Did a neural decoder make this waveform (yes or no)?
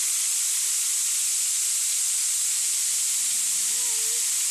no